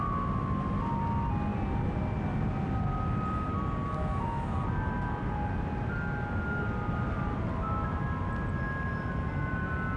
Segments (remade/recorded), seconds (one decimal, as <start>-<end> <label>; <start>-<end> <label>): 0.0-10.0 recorded